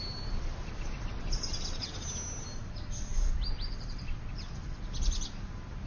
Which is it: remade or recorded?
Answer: recorded